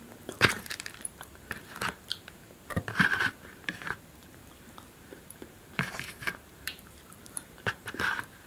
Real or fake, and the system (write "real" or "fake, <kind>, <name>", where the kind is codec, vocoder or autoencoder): fake, vocoder, BigVGAN v2